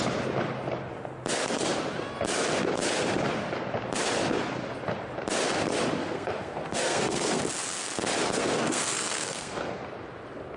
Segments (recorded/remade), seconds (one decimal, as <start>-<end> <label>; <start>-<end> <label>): 0.0-6.0 recorded; 6.0-7.4 remade; 7.4-8.4 recorded; 8.4-9.8 remade; 9.8-10.6 recorded